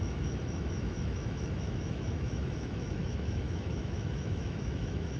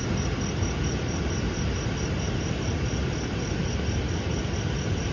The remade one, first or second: first